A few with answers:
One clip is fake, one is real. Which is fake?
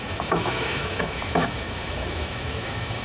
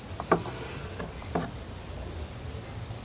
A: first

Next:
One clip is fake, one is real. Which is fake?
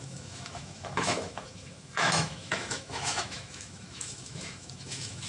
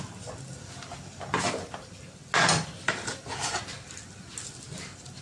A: first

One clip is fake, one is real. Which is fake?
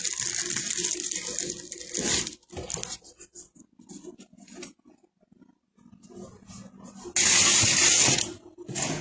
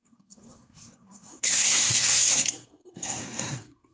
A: second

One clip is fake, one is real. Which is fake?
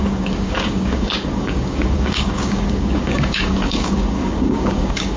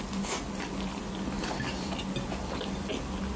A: first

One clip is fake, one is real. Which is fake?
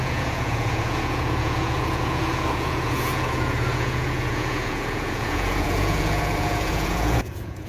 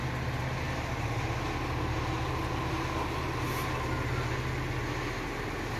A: first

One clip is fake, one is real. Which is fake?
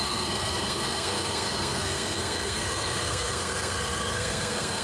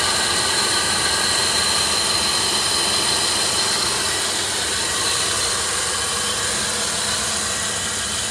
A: first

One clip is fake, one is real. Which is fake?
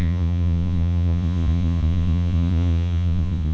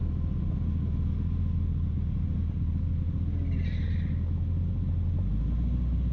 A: first